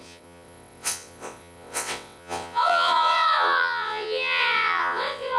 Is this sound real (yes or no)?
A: no